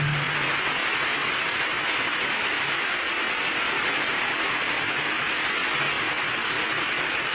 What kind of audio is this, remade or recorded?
recorded